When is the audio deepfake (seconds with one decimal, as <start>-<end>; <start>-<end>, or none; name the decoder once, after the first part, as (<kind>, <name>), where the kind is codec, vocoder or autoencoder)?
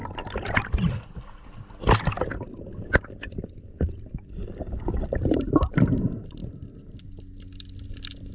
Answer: 4.9-6.4 (vocoder, BigVGAN v2)